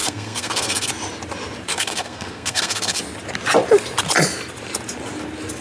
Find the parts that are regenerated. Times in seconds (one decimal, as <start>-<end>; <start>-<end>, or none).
0.0-0.9; 1.7-3.0